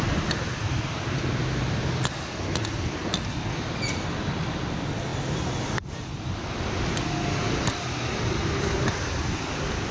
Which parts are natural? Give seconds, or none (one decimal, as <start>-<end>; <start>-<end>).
0.0-9.9